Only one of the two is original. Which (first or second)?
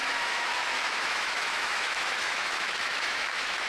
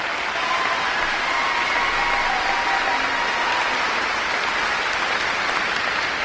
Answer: second